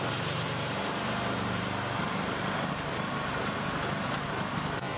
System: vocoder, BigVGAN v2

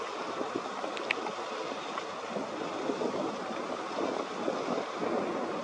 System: none